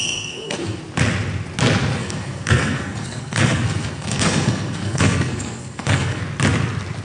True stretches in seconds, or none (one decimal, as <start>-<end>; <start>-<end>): 0.8-2.0; 6.2-7.0

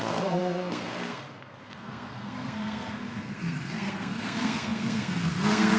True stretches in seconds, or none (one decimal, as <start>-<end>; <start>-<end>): none

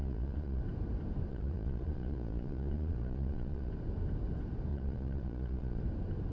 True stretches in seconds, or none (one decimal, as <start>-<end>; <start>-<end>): 0.6-1.3; 3.7-4.7; 5.8-6.3

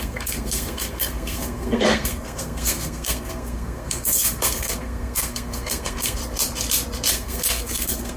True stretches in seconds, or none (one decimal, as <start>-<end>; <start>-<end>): 6.2-7.1

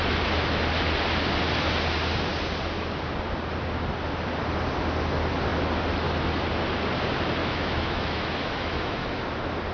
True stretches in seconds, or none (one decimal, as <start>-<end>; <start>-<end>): 0.0-7.4; 9.2-9.7

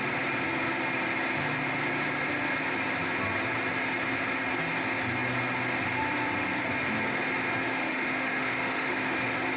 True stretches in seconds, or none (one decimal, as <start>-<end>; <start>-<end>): 0.0-7.8; 8.9-9.6

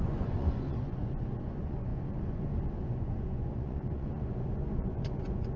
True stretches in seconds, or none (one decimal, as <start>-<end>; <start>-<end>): none

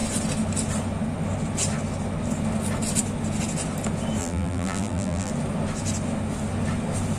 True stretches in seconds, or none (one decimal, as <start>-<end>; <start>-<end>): 0.0-4.2; 5.3-7.2